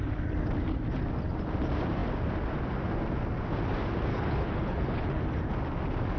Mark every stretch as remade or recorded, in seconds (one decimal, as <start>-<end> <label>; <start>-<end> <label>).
0.0-4.1 recorded; 4.1-5.2 remade; 5.2-6.2 recorded